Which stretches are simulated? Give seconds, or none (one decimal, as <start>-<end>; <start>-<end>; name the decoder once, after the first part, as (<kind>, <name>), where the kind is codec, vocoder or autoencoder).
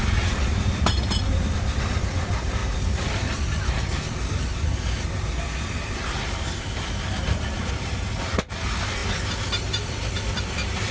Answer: none